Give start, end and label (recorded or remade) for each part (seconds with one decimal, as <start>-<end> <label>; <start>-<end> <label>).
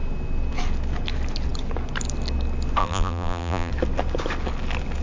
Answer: 0.0-2.8 recorded; 2.8-3.7 remade; 3.7-5.0 recorded